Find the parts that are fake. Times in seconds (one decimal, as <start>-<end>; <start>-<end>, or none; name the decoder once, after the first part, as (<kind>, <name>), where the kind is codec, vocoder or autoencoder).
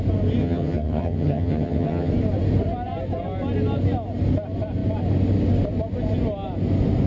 0.4-2.1 (vocoder, HiFi-GAN)